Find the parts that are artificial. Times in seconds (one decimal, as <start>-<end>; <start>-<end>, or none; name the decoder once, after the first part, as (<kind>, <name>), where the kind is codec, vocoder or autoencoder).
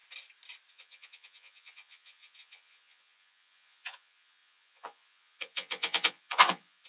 0.7-6.9 (vocoder, Vocos)